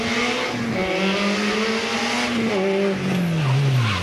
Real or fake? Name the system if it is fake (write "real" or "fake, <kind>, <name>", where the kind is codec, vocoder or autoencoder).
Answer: real